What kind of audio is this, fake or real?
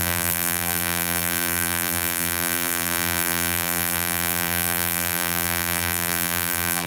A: fake